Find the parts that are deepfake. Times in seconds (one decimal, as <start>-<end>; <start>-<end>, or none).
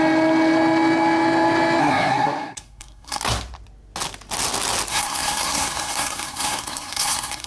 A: 1.8-3.2; 4.9-7.5